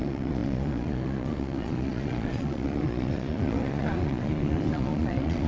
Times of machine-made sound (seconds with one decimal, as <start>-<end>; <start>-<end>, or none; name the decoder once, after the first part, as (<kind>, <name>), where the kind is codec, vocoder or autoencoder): 0.0-5.5 (vocoder, Vocos)